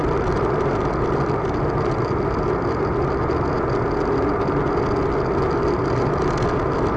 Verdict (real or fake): real